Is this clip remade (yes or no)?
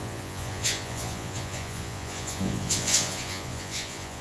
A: yes